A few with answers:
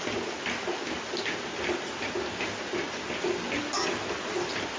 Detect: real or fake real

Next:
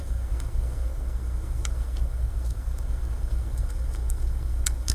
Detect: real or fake fake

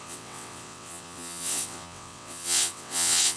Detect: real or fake fake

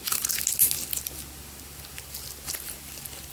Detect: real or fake real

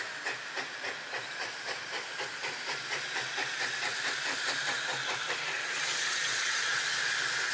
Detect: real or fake real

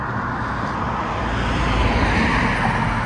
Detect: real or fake real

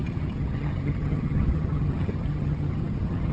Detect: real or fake fake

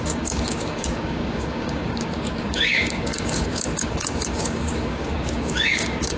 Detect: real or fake fake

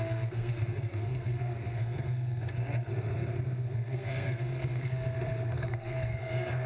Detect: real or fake fake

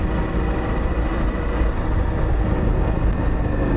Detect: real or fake real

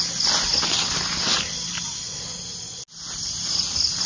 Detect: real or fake real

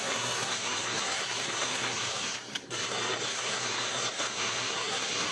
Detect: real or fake fake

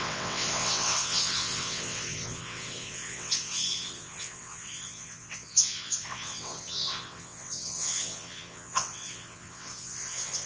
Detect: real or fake fake